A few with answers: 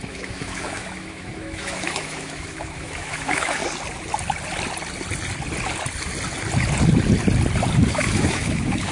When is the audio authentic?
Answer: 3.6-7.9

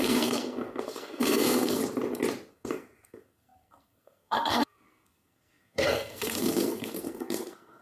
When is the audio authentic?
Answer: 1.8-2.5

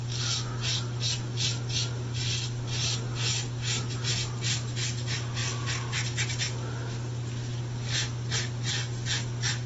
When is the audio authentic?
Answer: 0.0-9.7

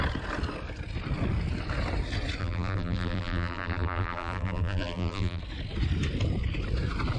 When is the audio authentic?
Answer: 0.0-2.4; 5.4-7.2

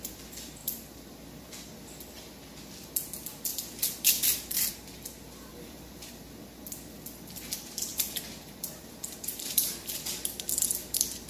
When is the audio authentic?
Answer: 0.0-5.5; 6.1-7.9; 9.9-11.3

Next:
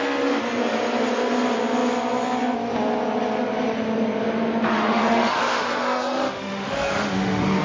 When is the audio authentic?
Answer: 0.0-4.7

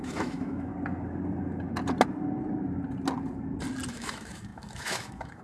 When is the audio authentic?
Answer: 0.7-3.9